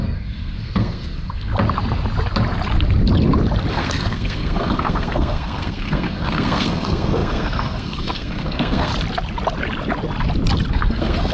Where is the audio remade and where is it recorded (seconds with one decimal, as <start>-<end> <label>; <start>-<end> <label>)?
0.0-1.5 remade; 1.5-3.7 recorded; 3.7-8.9 remade; 8.9-10.7 recorded; 10.7-11.3 remade